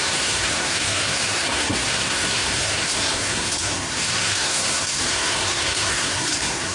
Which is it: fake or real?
fake